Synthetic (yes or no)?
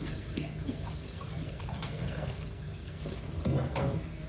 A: yes